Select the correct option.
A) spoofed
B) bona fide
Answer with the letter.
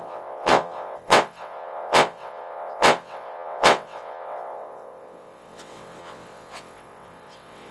A